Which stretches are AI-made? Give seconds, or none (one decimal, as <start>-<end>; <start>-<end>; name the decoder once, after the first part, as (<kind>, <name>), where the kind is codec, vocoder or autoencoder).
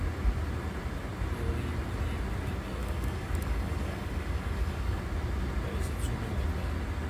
2.8-5.0 (codec, DAC)